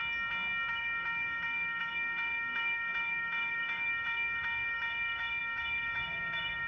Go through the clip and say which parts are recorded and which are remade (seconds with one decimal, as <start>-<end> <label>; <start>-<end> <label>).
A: 0.0-0.7 recorded; 0.7-6.7 remade